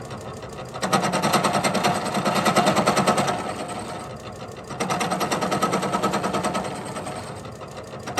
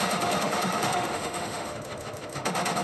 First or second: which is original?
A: first